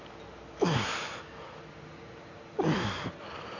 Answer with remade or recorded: recorded